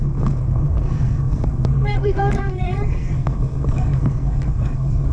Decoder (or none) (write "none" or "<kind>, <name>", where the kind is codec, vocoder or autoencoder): codec, SNAC